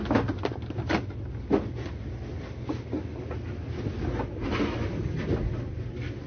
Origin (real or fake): real